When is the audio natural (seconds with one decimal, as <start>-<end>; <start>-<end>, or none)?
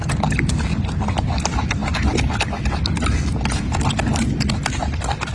0.0-5.3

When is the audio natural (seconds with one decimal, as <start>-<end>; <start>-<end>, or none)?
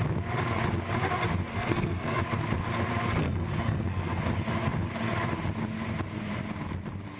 0.0-1.5; 2.2-3.2; 4.2-7.2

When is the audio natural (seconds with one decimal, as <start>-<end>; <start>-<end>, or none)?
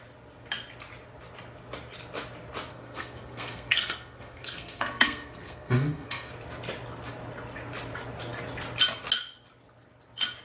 0.0-2.7; 6.3-10.4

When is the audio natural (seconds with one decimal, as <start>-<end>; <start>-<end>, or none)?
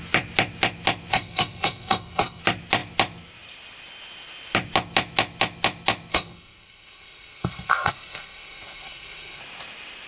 0.0-1.1; 2.4-6.1; 9.4-10.1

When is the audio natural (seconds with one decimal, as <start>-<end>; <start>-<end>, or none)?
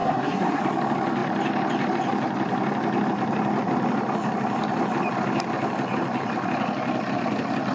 0.6-7.7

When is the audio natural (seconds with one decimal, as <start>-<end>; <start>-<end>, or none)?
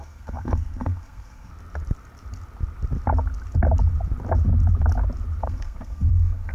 1.5-5.4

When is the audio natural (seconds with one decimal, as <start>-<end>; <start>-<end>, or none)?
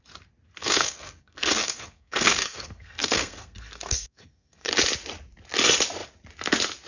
0.0-0.6; 4.7-6.9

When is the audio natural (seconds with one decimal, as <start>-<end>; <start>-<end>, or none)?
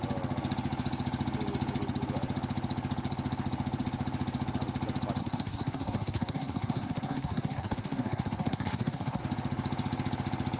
0.0-5.2; 9.2-10.6